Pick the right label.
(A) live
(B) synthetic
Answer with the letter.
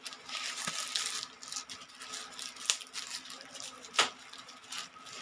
A